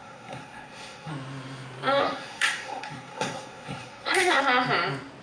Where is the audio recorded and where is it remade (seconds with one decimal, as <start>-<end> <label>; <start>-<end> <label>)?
0.0-1.1 remade; 1.1-2.0 recorded; 2.0-4.4 remade; 4.4-5.2 recorded